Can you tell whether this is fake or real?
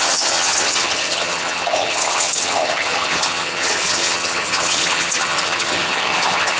fake